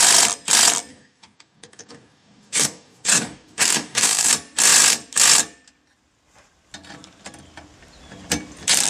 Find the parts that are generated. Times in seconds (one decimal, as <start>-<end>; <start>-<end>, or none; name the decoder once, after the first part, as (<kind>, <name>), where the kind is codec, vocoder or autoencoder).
0.9-4.3 (codec, DAC)